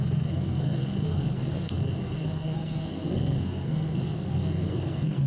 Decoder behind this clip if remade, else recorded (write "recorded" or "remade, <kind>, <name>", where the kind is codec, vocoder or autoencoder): remade, codec, SNAC